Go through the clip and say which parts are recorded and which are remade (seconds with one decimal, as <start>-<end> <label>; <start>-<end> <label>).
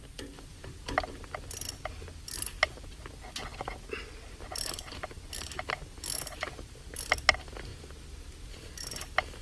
0.0-9.4 recorded